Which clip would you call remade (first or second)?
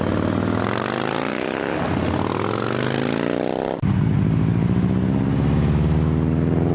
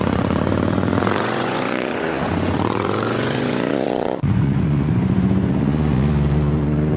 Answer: second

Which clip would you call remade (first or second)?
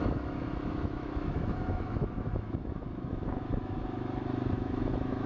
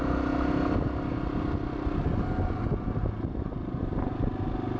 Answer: first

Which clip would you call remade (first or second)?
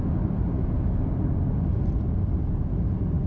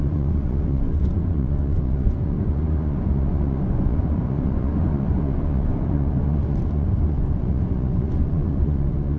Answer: second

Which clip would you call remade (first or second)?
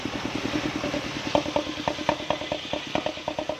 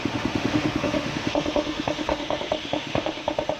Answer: second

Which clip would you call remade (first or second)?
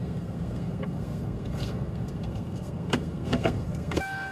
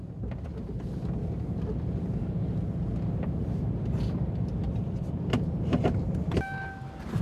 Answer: first